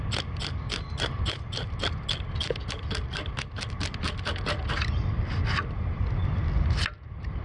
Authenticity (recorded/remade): recorded